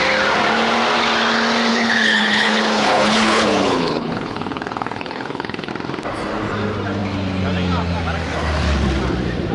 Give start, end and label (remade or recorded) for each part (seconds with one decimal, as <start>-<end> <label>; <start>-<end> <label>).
0.0-1.7 recorded; 1.7-5.7 remade; 5.7-9.5 recorded